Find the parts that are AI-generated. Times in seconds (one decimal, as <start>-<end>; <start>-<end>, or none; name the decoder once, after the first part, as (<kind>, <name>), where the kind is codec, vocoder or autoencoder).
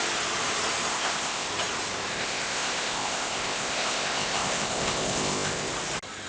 0.9-1.5 (codec, ZipCodec); 2.1-5.7